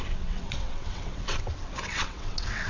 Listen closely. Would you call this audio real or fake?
fake